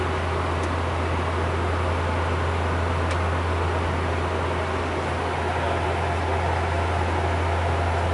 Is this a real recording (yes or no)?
yes